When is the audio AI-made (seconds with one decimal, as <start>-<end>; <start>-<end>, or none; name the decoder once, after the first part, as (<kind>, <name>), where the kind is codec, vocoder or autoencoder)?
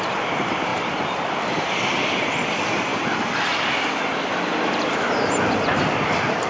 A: 0.0-0.7 (vocoder, BigVGAN v2); 2.5-2.9; 4.7-6.5